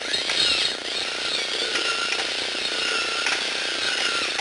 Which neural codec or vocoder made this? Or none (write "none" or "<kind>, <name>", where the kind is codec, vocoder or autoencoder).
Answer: none